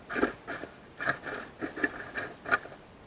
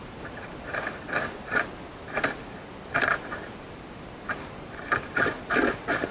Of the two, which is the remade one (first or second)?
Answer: second